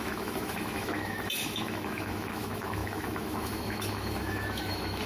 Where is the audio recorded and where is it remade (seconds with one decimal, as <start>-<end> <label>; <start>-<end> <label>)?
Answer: 0.0-5.1 remade